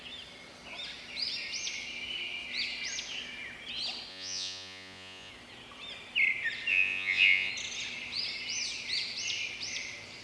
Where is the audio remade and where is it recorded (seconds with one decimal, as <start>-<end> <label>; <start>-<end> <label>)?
0.0-4.1 recorded; 4.1-5.3 remade; 5.3-6.7 recorded; 6.7-7.5 remade; 7.5-10.2 recorded